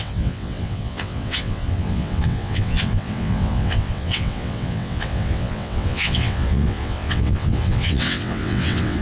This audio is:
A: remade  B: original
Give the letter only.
A